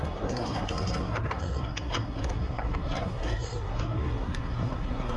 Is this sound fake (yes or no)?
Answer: yes